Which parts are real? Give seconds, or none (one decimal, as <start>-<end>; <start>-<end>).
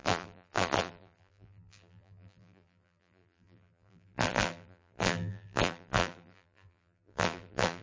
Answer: none